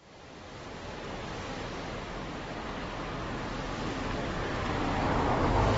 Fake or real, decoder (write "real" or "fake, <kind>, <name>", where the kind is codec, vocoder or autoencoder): real